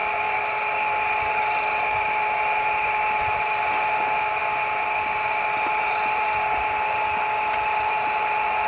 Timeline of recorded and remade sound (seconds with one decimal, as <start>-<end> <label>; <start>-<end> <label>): 0.0-8.7 recorded